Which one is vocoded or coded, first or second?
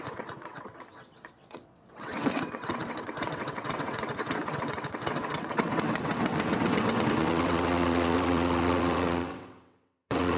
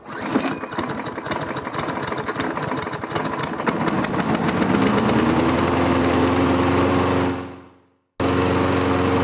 first